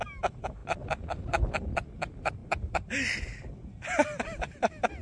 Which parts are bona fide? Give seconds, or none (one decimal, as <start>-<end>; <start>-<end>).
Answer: 0.0-5.0